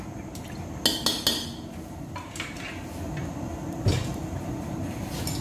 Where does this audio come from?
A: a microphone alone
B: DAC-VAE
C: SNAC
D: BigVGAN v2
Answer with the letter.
A